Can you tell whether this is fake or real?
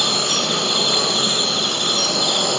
real